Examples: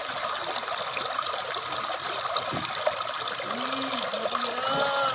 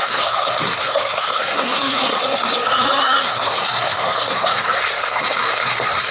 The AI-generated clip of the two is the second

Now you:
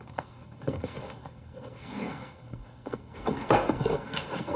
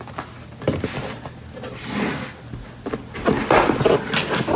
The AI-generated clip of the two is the first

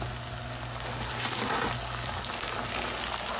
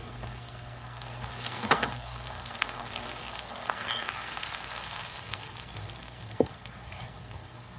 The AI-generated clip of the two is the second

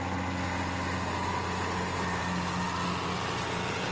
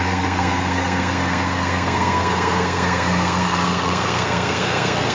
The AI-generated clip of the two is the second